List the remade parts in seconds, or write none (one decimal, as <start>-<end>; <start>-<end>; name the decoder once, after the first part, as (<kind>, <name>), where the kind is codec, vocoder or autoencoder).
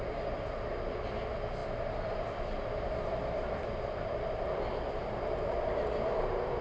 none